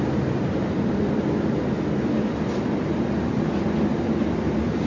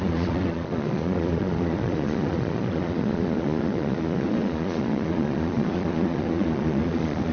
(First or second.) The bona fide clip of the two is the first